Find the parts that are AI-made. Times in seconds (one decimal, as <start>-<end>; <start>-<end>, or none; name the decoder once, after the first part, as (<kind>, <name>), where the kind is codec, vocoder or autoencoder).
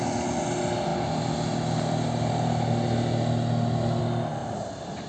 4.4-5.1 (vocoder, BigVGAN v2)